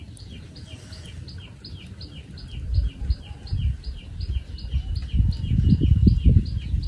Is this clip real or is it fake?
real